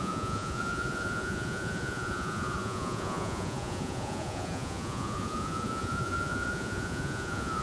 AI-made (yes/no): yes